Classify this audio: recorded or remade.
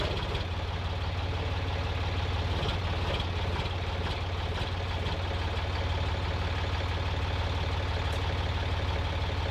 recorded